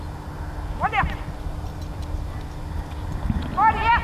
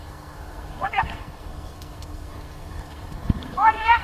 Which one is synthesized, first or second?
second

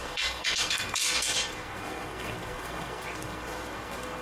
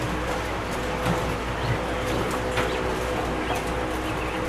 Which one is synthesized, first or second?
first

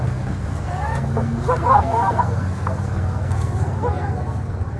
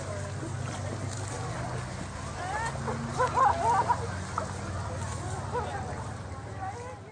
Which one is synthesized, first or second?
first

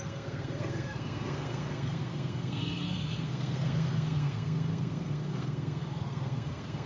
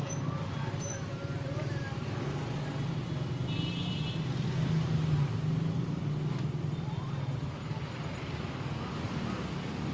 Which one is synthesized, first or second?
first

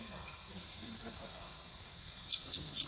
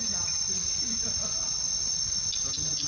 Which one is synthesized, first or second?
first